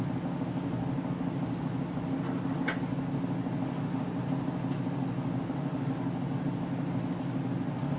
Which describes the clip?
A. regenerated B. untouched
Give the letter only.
B